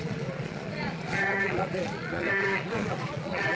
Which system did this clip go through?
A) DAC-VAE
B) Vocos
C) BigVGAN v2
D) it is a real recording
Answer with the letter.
B